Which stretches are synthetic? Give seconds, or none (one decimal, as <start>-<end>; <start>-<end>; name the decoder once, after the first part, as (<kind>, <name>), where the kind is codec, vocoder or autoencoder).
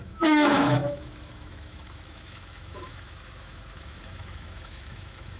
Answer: 0.0-5.4 (autoencoder, DAC-VAE)